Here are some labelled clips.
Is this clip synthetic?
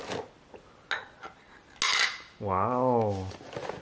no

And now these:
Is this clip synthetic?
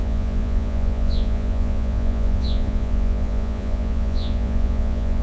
yes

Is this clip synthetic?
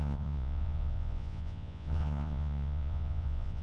yes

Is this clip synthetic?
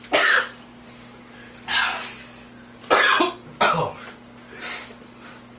no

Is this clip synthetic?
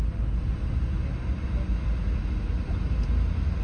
no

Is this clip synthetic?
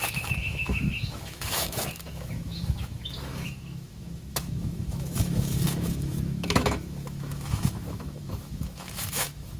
yes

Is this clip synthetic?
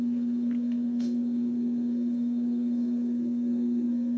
yes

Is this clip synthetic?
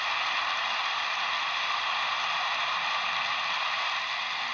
no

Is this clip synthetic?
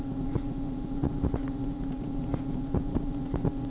yes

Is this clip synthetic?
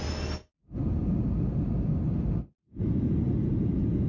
no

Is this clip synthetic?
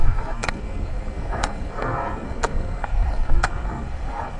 yes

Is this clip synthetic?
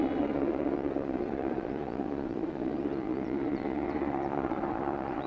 yes